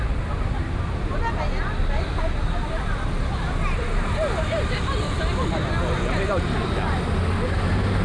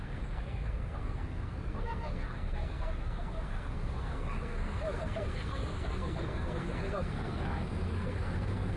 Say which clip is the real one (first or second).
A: first